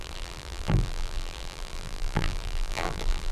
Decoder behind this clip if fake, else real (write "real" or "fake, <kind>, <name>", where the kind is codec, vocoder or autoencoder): fake, vocoder, BigVGAN v2